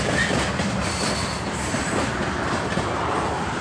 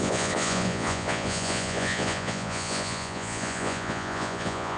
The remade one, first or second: second